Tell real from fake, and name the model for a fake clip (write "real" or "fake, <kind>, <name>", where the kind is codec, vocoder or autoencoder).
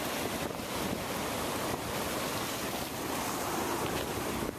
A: real